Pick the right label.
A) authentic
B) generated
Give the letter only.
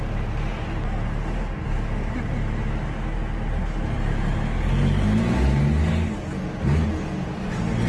A